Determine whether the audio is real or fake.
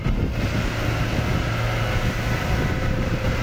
real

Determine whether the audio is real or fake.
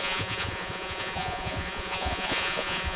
fake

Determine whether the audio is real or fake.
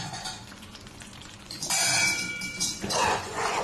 fake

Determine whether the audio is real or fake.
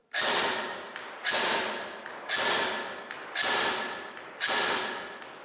real